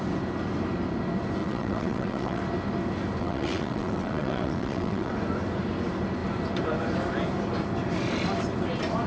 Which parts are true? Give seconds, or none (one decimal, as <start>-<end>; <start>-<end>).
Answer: 0.0-1.4; 2.4-3.2; 5.1-9.1